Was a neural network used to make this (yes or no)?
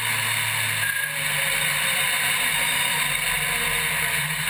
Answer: no